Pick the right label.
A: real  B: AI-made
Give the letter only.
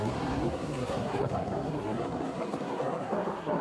B